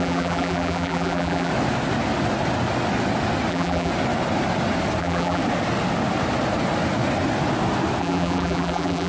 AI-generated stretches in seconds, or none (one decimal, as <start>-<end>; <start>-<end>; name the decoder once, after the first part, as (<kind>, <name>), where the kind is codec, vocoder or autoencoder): 0.0-1.5 (vocoder, BigVGAN v2); 3.5-3.9; 5.0-5.4; 8.0-9.1